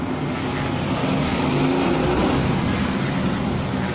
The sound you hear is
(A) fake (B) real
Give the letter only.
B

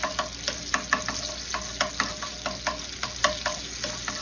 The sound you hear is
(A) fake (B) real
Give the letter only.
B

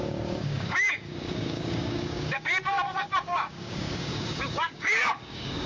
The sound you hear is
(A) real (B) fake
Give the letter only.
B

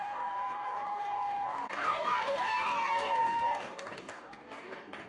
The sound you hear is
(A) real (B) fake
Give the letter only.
B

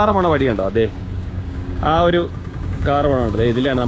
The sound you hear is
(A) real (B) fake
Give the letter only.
B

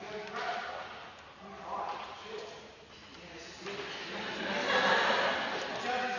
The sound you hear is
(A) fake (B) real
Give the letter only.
B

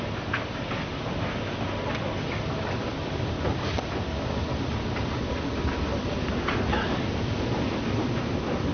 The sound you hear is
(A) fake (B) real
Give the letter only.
B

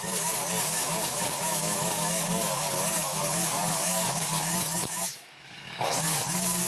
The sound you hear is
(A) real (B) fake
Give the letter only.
B